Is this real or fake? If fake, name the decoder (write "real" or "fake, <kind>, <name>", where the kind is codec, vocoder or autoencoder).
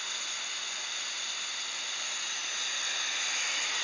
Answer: real